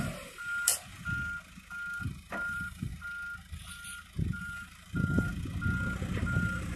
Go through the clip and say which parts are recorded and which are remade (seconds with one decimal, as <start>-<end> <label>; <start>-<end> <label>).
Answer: 0.0-0.7 remade; 0.7-2.0 recorded; 2.0-2.9 remade; 2.9-4.4 recorded; 4.4-5.3 remade; 5.3-6.0 recorded; 6.0-6.8 remade